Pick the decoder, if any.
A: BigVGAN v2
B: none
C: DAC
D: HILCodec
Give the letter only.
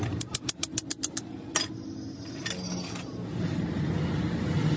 B